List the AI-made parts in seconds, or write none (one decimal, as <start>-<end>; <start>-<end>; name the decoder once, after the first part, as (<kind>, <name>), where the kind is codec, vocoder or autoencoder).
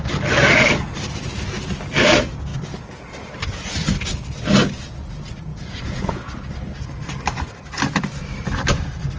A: 5.5-6.3 (vocoder, Vocos)